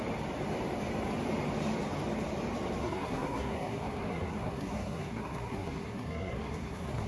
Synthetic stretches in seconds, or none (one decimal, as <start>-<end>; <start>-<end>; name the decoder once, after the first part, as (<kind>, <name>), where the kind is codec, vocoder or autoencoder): 2.8-7.1 (codec, SNAC)